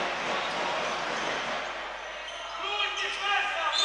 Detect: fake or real real